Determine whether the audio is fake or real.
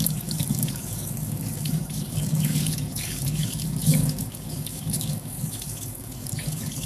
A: fake